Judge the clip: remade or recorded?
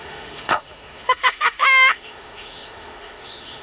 remade